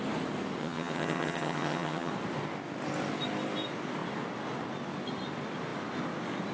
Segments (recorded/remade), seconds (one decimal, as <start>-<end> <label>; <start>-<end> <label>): 0.0-0.6 recorded; 0.6-2.1 remade; 2.1-6.5 recorded